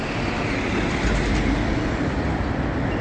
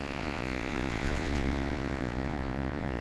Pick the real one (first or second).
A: first